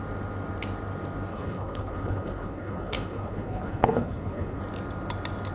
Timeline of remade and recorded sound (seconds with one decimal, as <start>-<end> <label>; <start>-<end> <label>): 0.0-1.3 recorded; 1.3-4.6 remade; 4.6-5.5 recorded